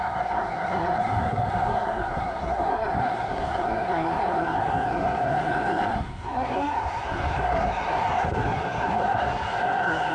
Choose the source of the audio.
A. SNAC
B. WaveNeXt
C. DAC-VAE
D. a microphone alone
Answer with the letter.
A